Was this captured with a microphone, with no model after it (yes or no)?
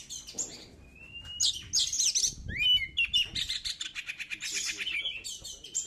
yes